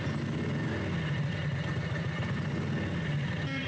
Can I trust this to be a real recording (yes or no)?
yes